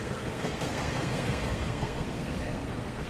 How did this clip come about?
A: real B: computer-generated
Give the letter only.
B